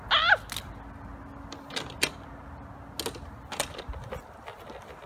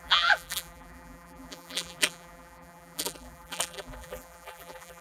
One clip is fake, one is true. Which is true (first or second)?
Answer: first